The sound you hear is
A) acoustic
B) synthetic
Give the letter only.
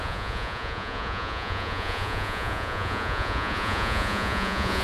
B